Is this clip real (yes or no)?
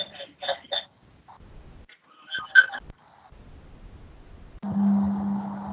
yes